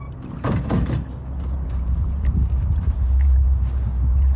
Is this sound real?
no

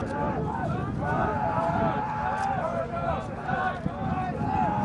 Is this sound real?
yes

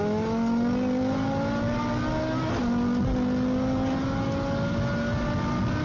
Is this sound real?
yes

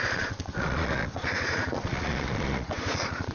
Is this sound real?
no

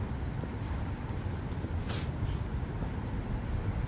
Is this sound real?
yes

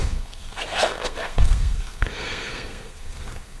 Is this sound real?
no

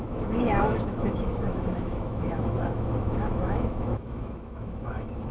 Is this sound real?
no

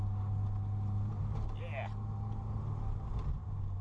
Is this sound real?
yes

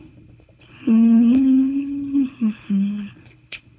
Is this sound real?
no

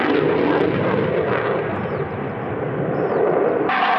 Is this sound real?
yes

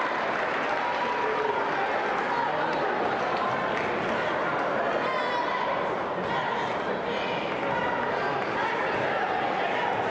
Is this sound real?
yes